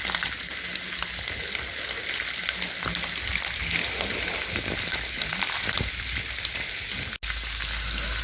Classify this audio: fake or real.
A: real